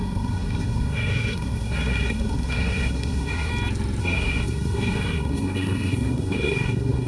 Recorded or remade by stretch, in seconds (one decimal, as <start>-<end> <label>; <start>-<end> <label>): 0.0-3.5 remade; 3.5-4.0 recorded; 4.0-7.1 remade